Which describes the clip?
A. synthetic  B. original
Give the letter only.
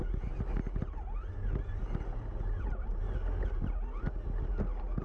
B